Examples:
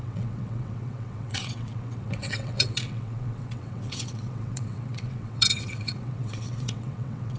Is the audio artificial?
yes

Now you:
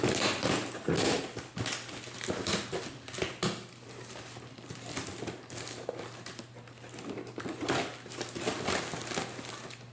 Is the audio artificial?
no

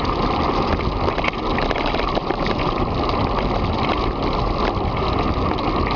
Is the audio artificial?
no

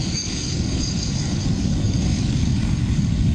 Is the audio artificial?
yes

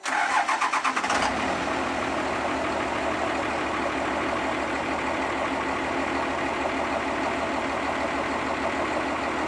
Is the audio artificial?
no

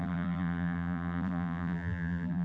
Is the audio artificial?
yes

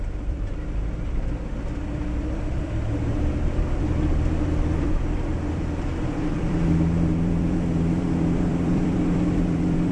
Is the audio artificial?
yes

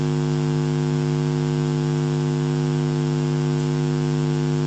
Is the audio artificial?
no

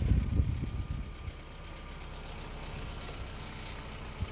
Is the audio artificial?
no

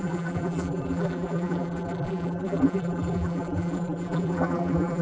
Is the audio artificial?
yes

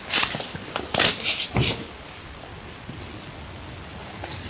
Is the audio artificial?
no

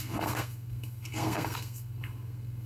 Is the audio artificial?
yes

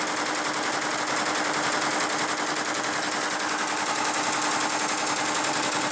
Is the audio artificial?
no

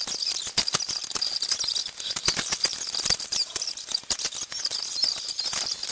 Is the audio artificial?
no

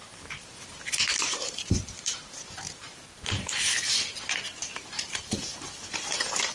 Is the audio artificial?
yes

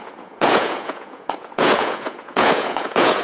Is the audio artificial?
yes